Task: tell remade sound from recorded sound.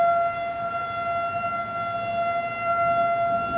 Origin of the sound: recorded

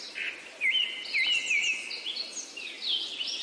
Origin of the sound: recorded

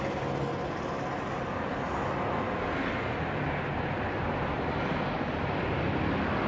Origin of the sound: recorded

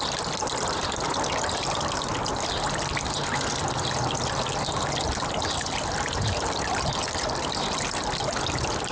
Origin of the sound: recorded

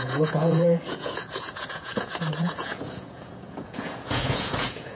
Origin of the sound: remade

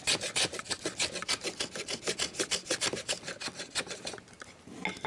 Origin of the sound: recorded